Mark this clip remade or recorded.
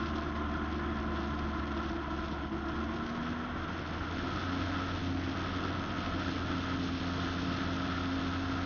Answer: recorded